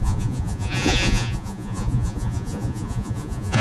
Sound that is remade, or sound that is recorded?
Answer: remade